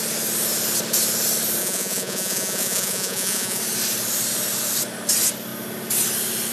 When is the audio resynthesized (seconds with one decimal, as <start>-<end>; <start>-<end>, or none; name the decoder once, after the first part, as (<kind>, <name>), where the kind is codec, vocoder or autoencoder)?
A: 1.6-3.6 (vocoder, Vocos)